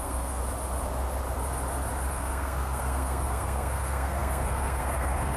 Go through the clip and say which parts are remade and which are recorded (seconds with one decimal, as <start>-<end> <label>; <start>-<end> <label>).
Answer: 0.0-0.4 remade; 0.4-2.1 recorded; 2.1-5.4 remade